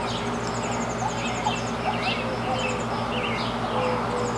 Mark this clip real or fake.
real